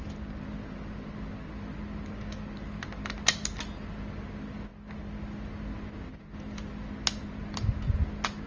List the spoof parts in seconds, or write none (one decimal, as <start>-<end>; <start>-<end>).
none